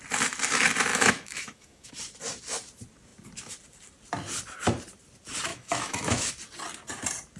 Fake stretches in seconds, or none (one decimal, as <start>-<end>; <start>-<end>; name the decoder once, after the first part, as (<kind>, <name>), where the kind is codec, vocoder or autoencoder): 0.9-1.9 (autoencoder, DAC-VAE); 5.5-6.3